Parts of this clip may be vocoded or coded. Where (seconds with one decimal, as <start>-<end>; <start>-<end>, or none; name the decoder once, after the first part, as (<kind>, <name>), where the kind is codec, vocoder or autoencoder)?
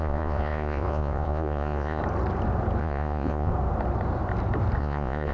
0.0-2.0 (vocoder, Vocos); 2.8-3.5; 4.8-5.3